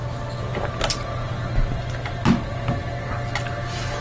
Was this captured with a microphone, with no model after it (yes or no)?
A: yes